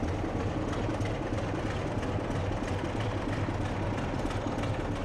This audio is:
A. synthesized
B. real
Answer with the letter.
B